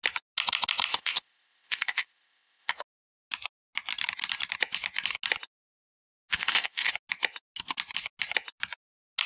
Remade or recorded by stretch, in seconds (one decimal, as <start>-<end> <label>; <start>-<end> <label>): 0.0-0.9 recorded; 0.9-2.7 remade; 2.7-6.3 recorded; 6.3-6.9 remade; 6.9-9.3 recorded